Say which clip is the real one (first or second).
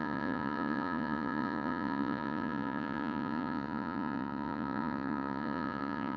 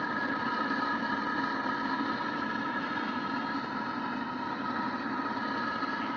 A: second